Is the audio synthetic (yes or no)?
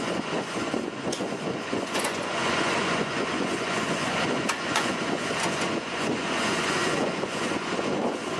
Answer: yes